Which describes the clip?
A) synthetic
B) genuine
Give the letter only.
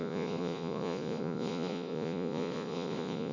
A